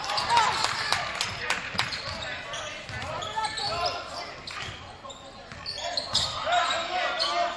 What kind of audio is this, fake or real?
real